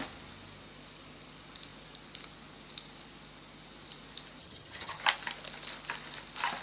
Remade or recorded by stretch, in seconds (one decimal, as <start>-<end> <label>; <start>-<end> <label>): 0.0-4.4 recorded; 4.4-5.0 remade; 5.0-6.6 recorded